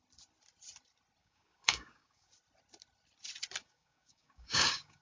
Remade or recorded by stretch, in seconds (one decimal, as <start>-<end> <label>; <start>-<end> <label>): 0.0-1.2 recorded; 1.2-2.3 remade; 2.3-3.6 recorded; 3.6-5.0 remade